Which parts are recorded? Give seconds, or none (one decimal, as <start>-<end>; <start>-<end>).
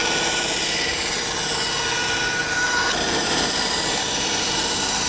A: 1.5-2.4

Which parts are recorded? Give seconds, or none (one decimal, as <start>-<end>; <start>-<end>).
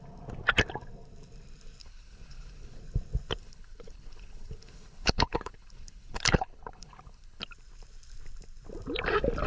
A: 0.0-1.8; 2.8-3.4; 7.4-9.5